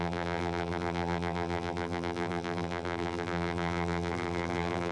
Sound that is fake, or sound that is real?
fake